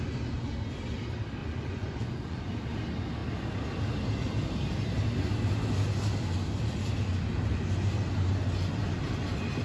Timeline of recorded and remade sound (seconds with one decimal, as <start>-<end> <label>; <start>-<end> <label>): 0.0-1.4 recorded; 1.4-2.5 remade; 2.5-9.6 recorded